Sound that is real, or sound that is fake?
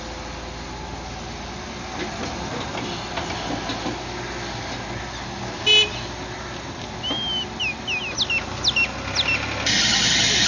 real